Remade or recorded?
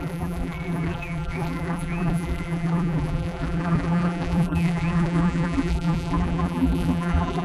remade